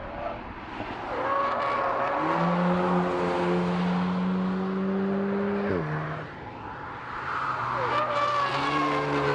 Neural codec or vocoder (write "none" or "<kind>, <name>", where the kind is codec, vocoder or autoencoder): none